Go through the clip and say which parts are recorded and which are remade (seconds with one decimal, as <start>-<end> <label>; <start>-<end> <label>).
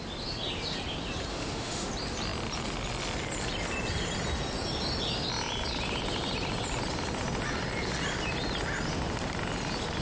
0.0-1.3 recorded; 1.3-1.9 remade; 1.9-10.0 recorded